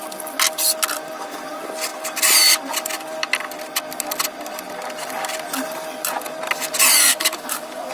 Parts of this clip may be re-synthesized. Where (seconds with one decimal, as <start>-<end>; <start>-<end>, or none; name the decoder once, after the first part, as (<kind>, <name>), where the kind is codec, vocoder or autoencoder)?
7.1-7.9 (codec, DAC)